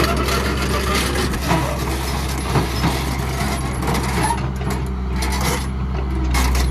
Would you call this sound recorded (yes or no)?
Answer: yes